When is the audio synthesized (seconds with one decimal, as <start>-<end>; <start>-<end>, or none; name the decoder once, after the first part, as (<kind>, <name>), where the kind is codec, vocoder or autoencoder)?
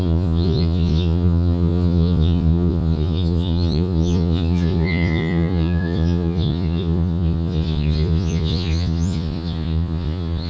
0.0-10.5 (vocoder, Vocos)